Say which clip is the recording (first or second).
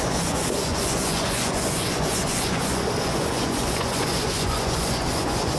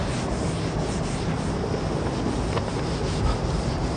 second